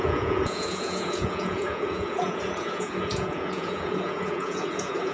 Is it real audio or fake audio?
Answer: fake